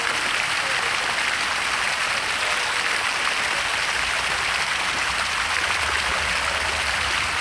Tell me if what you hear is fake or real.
real